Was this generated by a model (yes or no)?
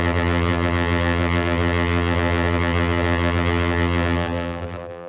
yes